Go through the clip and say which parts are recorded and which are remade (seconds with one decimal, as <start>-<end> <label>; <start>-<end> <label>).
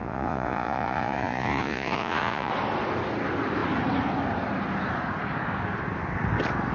0.0-2.5 remade; 2.5-6.7 recorded